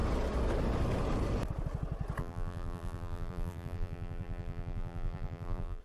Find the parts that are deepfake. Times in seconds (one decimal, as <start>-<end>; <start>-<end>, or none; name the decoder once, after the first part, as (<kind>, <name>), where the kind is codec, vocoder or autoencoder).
2.2-5.8 (vocoder, BigVGAN v2)